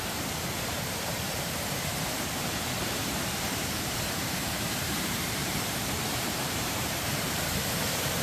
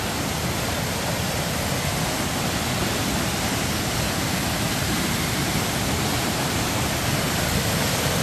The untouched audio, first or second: second